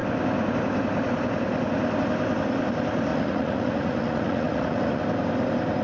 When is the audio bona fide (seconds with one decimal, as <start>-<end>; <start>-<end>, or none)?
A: 0.0-3.1; 5.0-5.8